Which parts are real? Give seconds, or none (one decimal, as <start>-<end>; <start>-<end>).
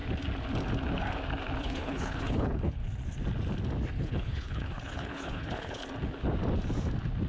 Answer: 0.0-1.6; 2.8-4.0; 5.8-7.3